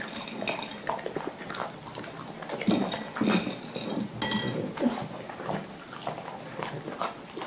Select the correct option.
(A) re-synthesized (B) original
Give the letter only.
B